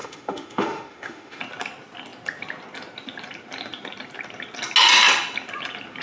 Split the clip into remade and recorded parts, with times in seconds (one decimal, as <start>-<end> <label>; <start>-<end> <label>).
0.0-1.4 remade; 1.4-6.0 recorded